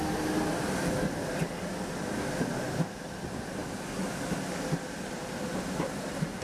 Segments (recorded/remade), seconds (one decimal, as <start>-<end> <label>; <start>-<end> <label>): 0.0-6.4 recorded